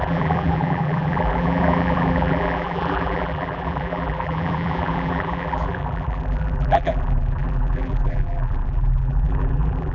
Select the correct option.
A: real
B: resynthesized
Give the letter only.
B